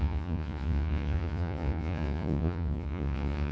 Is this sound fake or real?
fake